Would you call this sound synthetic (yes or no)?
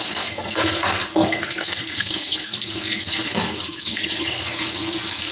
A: yes